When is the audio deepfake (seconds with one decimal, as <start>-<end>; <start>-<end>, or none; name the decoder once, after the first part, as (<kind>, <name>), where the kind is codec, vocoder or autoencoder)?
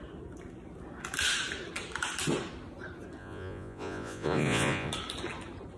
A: 3.2-4.9 (vocoder, Vocos)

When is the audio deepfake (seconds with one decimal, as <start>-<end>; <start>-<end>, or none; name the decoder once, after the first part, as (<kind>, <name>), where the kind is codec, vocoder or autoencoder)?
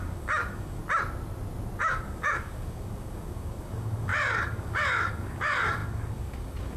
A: 0.0-0.8 (codec, DAC); 1.8-6.8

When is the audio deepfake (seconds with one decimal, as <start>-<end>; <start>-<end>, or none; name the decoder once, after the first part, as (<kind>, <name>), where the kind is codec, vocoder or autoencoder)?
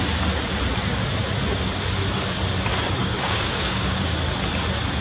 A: 3.0-4.0 (codec, DAC)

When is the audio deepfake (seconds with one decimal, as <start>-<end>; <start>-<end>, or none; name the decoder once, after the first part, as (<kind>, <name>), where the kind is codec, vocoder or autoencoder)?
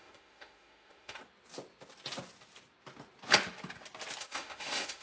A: 0.0-1.2 (autoencoder, DAC-VAE); 4.2-5.0